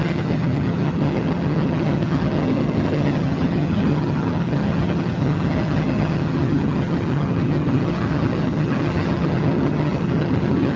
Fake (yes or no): yes